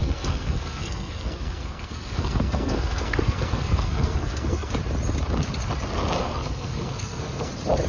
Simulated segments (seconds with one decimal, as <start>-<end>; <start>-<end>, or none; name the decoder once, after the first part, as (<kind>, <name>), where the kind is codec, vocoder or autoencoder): 0.0-4.7 (codec, SNAC); 6.2-7.5